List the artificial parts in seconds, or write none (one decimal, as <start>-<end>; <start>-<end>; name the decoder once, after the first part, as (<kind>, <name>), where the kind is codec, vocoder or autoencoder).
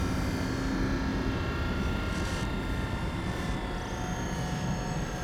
1.1-3.9 (vocoder, BigVGAN v2)